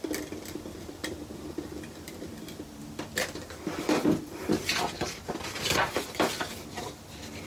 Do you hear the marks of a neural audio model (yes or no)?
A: yes